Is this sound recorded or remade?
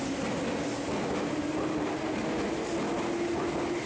recorded